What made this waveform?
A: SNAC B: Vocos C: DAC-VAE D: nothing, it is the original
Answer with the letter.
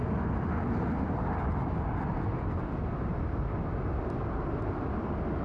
D